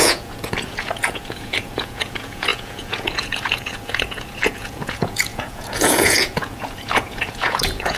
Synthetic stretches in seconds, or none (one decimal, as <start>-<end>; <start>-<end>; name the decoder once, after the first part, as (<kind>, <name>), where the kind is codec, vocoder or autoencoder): 0.0-8.0 (vocoder, Vocos)